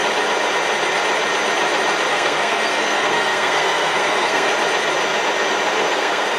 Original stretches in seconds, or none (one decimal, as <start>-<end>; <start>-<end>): 0.0-2.1; 4.5-5.8